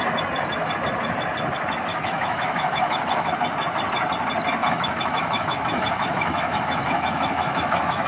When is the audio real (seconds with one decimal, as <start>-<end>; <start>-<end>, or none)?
0.0-1.9; 3.3-4.6